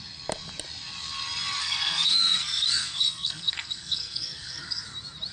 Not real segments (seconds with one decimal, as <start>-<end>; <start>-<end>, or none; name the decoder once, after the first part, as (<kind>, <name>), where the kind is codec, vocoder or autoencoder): 1.6-4.8 (codec, SNAC)